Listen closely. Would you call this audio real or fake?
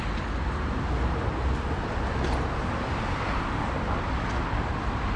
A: real